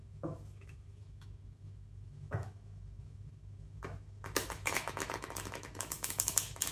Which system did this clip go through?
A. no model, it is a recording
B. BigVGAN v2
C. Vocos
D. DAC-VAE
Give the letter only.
D